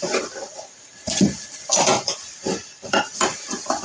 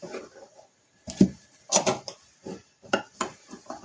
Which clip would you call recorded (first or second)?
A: second